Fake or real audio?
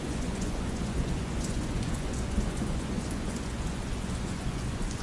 fake